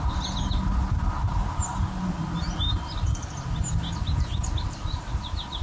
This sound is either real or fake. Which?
real